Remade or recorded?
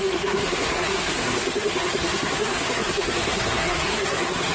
remade